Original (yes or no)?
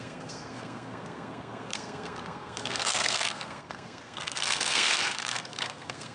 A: no